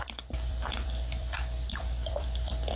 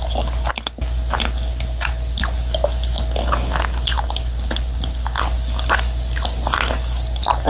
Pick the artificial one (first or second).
first